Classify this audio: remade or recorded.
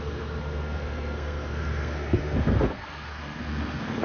remade